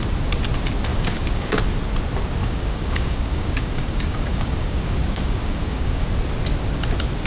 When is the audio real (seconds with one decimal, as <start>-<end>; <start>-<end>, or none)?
0.0-0.9; 1.6-2.4; 6.1-7.3